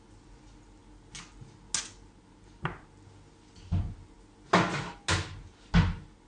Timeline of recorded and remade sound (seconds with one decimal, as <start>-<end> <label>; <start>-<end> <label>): 0.0-6.3 recorded